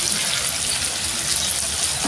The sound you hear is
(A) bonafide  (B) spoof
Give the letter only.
A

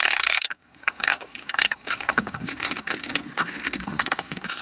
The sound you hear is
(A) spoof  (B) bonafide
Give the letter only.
A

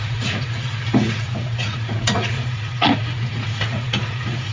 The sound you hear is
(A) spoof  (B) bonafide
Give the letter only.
A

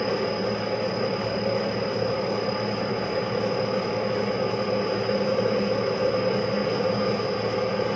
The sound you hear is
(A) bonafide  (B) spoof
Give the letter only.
A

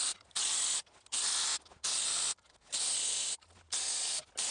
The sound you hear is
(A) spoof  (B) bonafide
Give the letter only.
B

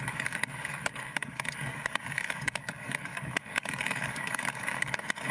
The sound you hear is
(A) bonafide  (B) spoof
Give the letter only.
B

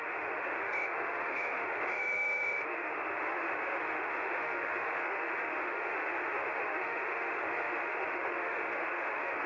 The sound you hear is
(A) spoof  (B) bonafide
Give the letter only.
A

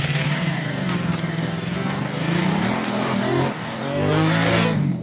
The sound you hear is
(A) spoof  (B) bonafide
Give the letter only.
A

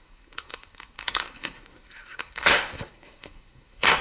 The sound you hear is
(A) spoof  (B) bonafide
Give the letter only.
A